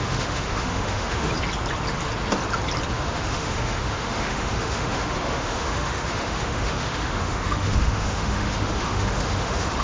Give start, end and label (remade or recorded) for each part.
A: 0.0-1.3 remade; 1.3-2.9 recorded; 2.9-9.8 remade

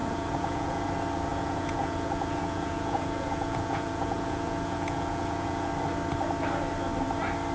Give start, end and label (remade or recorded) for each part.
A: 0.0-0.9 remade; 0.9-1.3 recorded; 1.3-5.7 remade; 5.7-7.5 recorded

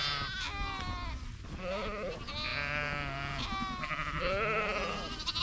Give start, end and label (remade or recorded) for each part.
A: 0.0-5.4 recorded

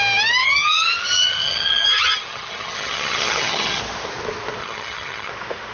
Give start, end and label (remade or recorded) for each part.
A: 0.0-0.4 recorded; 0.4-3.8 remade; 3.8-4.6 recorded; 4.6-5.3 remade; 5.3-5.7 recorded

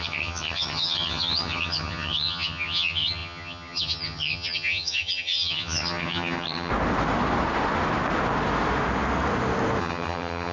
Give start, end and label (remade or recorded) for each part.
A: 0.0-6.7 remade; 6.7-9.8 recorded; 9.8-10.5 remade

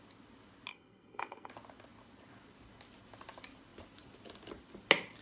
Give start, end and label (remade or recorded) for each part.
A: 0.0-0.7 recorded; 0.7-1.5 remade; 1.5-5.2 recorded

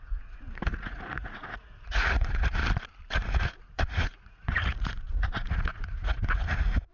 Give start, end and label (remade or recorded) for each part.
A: 0.0-2.6 remade; 2.6-3.1 recorded; 3.1-6.9 remade